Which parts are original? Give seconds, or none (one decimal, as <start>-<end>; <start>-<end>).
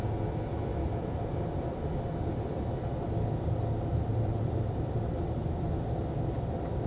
0.0-0.7; 1.7-3.9; 5.0-6.9